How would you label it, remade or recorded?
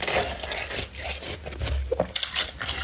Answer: recorded